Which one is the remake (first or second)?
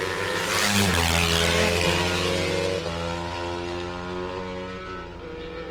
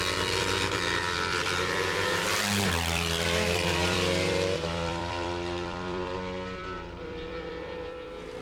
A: second